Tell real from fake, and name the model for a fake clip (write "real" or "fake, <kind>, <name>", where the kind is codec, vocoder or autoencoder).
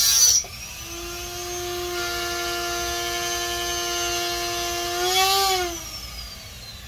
real